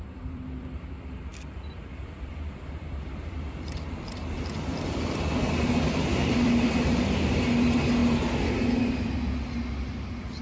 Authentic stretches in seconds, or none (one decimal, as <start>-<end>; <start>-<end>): 8.0-10.0

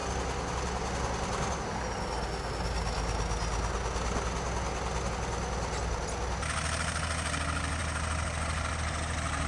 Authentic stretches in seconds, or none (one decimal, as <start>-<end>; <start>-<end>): 0.0-9.5

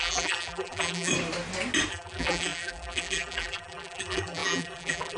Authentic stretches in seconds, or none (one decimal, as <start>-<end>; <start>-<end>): 1.1-1.9

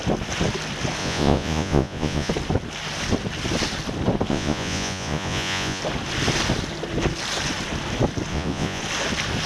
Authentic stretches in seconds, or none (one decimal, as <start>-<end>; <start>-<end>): 0.0-1.0; 2.3-4.3; 5.8-8.3; 8.8-9.5

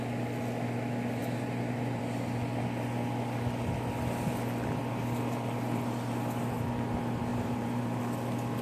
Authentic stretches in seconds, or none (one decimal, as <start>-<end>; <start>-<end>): 0.0-1.2; 2.0-7.3; 8.0-8.6

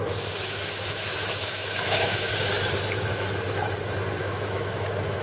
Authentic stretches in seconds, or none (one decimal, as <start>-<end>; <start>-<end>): 2.3-4.2

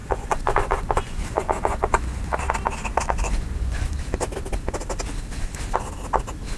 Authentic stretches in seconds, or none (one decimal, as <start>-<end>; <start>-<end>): 2.4-2.9; 3.9-6.6